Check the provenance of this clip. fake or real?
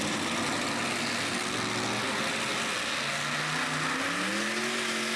real